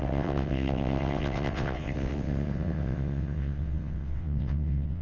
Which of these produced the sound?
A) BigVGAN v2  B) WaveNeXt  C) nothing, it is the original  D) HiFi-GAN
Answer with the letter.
B